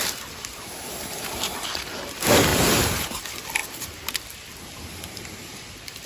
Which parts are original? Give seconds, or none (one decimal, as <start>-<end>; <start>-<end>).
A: 0.0-2.5; 3.2-6.1